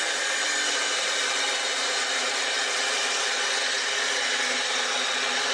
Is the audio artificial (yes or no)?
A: no